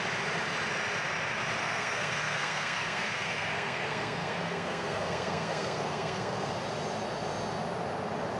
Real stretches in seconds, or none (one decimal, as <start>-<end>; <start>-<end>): 0.0-1.6; 6.5-8.4